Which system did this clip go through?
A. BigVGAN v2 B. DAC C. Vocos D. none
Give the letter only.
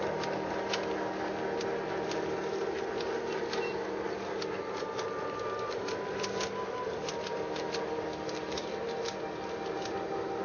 D